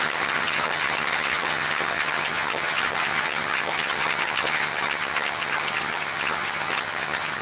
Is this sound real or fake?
fake